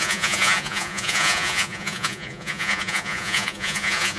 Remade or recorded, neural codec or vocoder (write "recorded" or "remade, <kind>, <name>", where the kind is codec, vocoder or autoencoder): remade, vocoder, Vocos